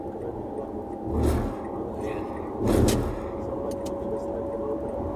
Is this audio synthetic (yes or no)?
no